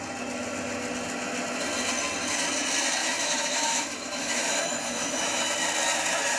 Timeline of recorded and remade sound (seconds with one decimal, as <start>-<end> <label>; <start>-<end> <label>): 0.0-3.0 recorded; 3.0-5.4 remade; 5.4-6.4 recorded